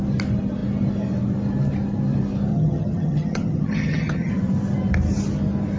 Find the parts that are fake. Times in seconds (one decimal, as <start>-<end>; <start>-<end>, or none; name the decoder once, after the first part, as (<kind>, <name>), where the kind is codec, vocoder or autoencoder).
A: 2.5-4.3 (vocoder, HiFi-GAN)